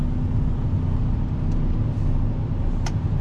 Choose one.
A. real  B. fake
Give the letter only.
A